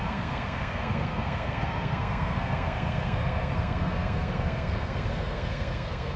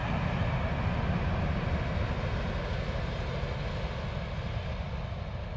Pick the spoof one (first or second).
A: first